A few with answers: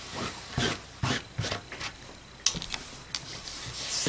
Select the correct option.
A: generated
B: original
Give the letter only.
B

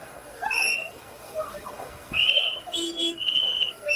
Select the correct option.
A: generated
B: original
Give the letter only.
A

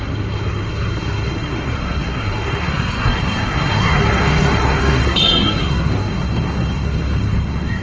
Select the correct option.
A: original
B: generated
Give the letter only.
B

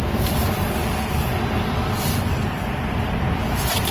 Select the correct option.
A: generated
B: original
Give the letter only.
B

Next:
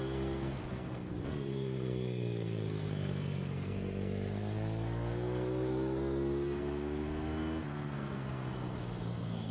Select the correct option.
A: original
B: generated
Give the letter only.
B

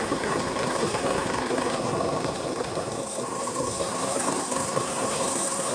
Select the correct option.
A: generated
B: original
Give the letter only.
A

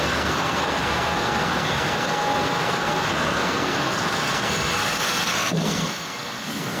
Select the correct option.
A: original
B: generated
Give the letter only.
B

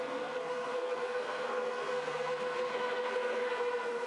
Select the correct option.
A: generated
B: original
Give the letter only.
A